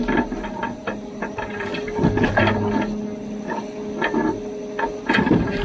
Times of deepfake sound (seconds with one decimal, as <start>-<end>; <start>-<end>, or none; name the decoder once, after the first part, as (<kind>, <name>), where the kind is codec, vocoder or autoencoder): 0.0-1.7 (vocoder, BigVGAN v2); 5.1-5.6